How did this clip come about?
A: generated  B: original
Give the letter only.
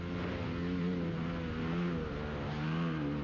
B